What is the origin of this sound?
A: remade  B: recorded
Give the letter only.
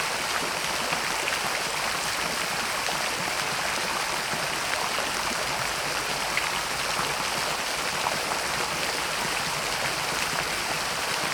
B